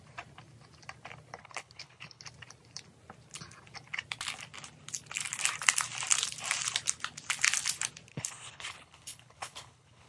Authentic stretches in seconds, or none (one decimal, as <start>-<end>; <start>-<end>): 0.0-1.4; 2.2-8.1